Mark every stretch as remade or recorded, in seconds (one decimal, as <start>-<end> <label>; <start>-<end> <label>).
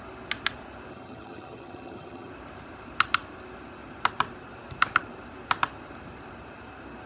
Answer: 0.0-0.9 recorded; 0.9-2.3 remade; 2.3-7.1 recorded